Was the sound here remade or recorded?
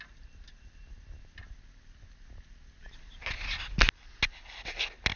recorded